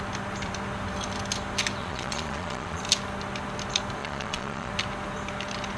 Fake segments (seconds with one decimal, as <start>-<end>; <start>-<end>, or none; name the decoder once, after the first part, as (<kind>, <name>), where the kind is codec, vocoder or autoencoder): 1.8-2.8 (vocoder, Vocos); 4.0-4.7

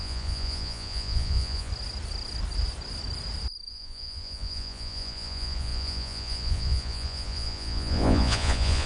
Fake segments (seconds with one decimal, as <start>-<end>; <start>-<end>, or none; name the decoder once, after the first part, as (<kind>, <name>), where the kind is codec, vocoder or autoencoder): 0.0-1.7 (vocoder, Vocos); 3.7-8.9

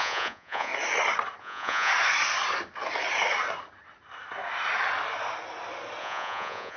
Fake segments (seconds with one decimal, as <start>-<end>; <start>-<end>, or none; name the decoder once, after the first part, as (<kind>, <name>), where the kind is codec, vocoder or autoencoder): 0.0-0.7 (vocoder, Vocos); 1.4-1.9; 6.0-6.8

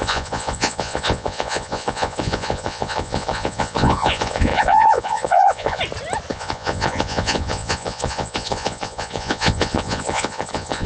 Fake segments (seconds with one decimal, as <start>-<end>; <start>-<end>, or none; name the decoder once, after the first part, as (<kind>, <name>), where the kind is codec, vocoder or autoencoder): 0.0-5.8 (vocoder, Vocos); 6.3-10.9

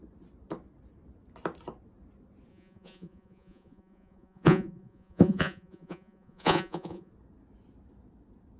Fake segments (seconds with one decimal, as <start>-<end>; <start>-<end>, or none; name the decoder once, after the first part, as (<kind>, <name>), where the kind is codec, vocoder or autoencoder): 2.5-7.1 (vocoder, Vocos)

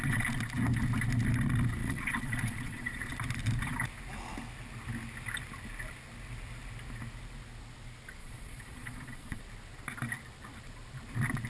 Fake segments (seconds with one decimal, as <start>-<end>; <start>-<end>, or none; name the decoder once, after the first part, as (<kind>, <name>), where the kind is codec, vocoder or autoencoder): 1.8-3.1 (vocoder, Vocos); 8.2-9.4

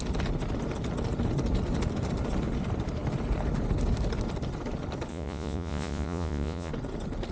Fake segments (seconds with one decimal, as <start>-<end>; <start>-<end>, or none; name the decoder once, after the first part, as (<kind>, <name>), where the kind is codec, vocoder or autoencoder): 5.1-6.7 (vocoder, Vocos)